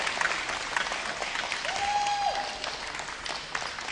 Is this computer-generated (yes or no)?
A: no